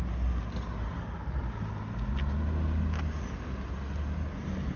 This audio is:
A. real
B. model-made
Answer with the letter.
A